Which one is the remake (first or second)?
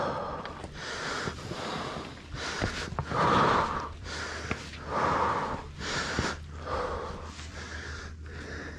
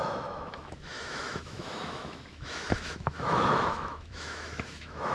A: second